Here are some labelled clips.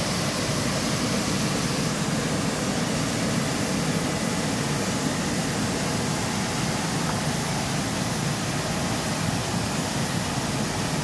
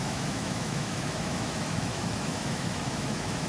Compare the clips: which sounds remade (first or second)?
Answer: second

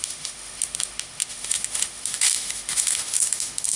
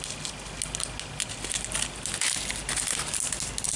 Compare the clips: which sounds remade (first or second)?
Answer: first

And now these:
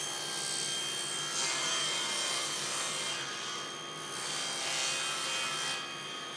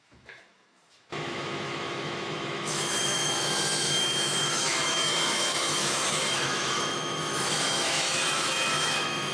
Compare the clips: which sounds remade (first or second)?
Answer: second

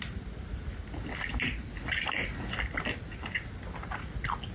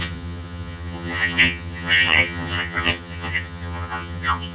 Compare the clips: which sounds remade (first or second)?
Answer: second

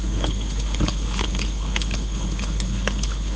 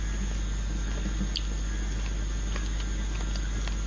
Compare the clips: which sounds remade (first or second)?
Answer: first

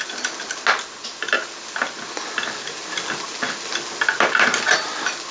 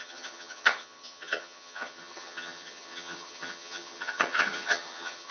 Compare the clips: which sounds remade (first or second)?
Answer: second